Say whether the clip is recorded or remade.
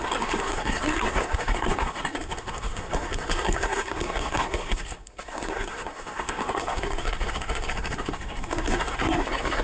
remade